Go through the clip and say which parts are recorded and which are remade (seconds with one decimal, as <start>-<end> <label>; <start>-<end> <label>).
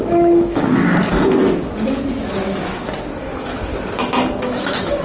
0.0-1.0 remade; 1.0-3.2 recorded; 3.2-3.7 remade; 3.7-4.4 recorded; 4.4-5.0 remade